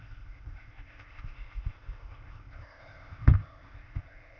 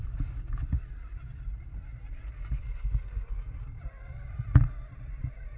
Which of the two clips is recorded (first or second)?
second